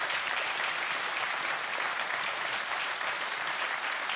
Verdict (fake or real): fake